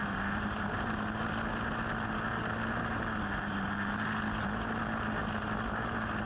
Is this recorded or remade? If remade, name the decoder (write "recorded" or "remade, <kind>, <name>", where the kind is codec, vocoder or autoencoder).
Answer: recorded